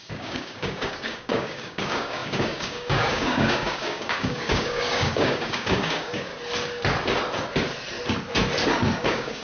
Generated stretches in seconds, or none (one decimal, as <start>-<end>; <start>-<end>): 0.0-6.3; 9.0-9.4